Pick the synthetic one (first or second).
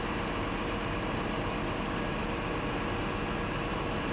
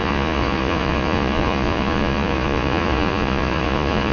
second